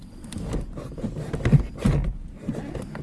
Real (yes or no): yes